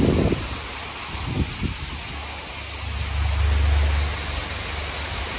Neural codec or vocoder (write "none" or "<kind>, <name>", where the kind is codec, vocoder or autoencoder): none